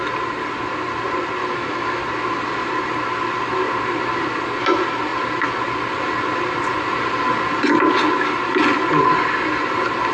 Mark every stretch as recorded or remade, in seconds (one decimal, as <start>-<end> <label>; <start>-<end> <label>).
0.0-1.4 recorded; 1.4-2.0 remade; 2.0-10.1 recorded